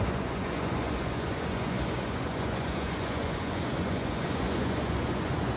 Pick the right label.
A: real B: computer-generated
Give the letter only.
B